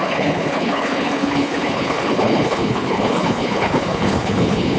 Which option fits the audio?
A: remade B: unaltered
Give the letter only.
A